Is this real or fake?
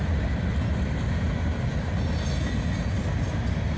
real